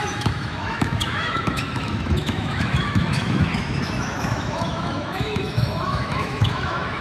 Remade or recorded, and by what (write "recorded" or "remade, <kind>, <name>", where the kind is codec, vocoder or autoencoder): remade, autoencoder, DAC-VAE